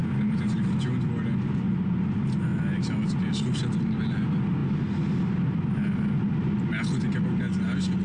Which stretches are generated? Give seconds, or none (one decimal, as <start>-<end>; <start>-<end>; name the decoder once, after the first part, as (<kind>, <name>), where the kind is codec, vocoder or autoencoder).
none